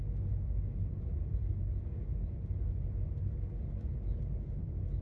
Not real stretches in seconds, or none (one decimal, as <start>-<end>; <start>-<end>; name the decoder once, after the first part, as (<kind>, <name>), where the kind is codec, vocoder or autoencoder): none